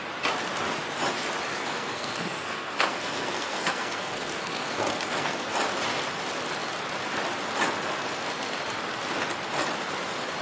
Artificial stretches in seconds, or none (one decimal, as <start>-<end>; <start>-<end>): 1.5-5.5